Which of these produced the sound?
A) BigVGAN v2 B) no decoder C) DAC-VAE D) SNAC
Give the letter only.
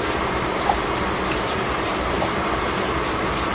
A